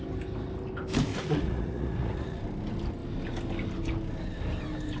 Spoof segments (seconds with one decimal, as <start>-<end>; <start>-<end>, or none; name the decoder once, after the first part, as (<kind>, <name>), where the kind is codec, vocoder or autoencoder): 1.1-2.4 (vocoder, Vocos)